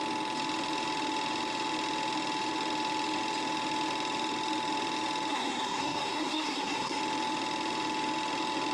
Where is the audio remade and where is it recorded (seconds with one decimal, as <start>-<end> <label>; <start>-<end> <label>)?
0.0-5.3 recorded; 5.3-7.0 remade; 7.0-8.7 recorded